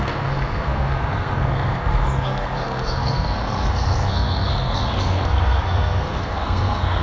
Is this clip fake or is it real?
fake